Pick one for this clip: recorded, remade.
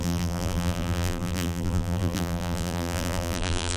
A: remade